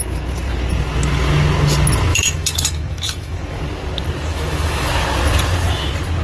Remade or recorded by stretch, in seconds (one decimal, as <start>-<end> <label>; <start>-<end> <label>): 0.0-2.1 recorded; 2.1-3.6 remade; 3.6-4.3 recorded; 4.3-4.9 remade; 4.9-6.2 recorded